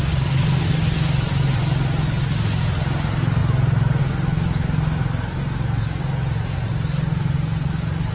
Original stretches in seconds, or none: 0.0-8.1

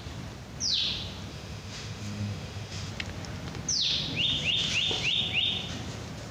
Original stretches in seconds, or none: 0.0-1.3; 2.9-6.3